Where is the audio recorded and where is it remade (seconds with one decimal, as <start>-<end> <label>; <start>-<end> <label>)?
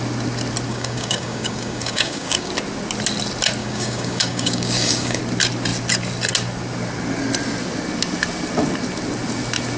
0.0-0.7 recorded; 0.7-2.5 remade; 2.5-3.6 recorded; 3.6-5.2 remade; 5.2-9.8 recorded